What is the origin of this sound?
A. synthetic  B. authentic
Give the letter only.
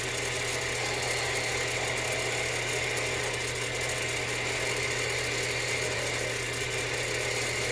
B